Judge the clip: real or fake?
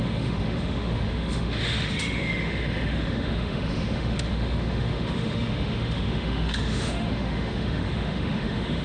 fake